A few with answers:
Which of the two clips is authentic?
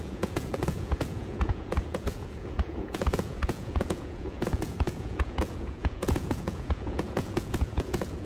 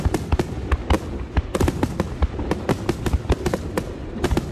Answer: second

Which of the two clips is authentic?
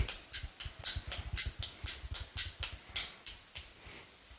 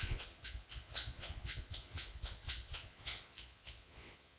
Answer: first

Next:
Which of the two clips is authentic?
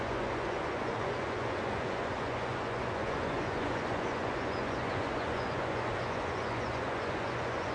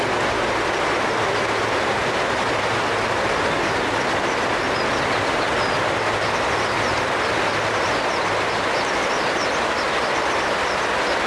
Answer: second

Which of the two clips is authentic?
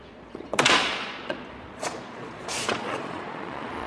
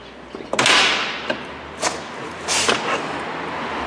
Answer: second